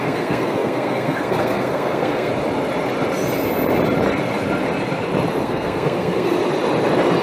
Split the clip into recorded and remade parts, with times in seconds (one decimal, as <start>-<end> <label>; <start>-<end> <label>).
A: 0.0-2.3 remade; 2.3-5.4 recorded; 5.4-6.4 remade; 6.4-7.2 recorded